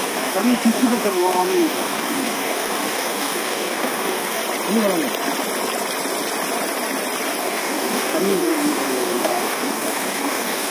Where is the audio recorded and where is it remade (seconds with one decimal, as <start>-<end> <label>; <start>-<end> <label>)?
0.0-4.4 remade; 4.4-7.4 recorded; 7.4-10.7 remade